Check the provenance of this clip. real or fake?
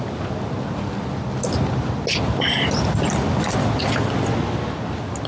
real